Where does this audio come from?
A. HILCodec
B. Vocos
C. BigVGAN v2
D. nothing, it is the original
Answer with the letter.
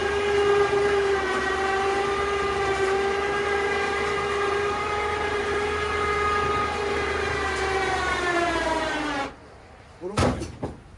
C